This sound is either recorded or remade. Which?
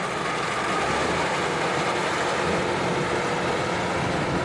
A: recorded